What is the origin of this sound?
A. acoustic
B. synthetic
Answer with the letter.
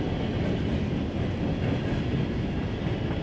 A